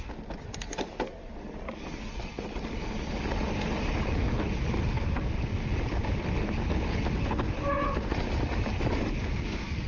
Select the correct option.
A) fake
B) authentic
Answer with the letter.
B